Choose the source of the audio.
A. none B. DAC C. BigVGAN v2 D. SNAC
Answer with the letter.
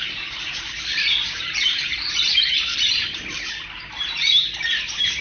C